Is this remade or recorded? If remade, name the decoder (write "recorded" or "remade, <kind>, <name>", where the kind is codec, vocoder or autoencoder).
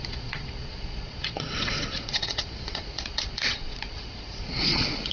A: remade, vocoder, Vocos